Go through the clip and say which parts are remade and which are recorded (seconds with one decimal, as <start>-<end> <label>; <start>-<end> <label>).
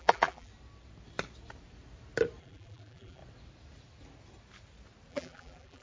0.0-0.5 remade; 0.5-2.4 recorded; 2.4-3.2 remade; 3.2-5.1 recorded; 5.1-5.8 remade